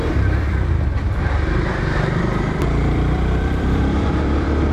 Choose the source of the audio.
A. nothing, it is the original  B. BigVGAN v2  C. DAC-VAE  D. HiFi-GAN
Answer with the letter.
B